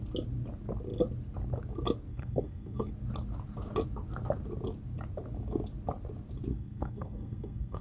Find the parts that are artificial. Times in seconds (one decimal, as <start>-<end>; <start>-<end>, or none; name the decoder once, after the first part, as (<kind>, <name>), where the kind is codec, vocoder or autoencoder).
2.1-2.9 (codec, SNAC); 6.5-7.8